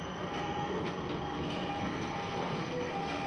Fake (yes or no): yes